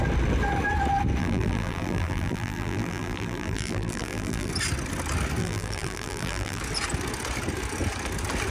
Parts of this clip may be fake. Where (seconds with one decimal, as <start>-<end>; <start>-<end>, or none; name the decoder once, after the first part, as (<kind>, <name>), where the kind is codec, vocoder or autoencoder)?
1.2-4.5 (vocoder, BigVGAN v2); 5.4-6.6